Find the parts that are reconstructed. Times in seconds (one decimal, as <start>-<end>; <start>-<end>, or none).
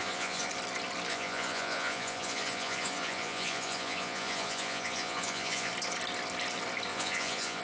0.0-0.5; 1.1-5.7; 6.9-7.6